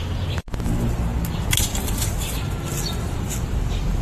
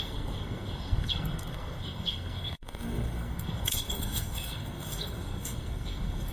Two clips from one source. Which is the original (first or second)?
first